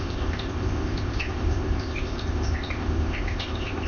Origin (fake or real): fake